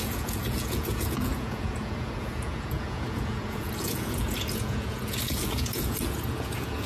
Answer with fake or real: fake